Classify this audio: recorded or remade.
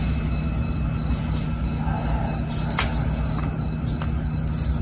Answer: recorded